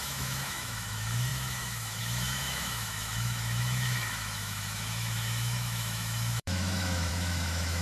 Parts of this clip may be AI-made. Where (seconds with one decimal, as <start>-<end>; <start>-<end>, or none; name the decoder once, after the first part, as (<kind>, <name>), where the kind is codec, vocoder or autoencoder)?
0.0-7.8 (autoencoder, DAC-VAE)